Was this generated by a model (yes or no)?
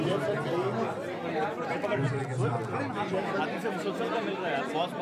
no